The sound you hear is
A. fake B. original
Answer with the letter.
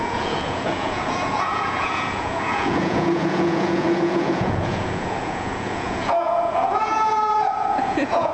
A